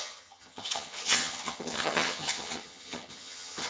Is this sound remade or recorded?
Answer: remade